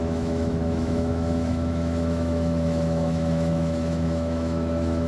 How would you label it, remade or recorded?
remade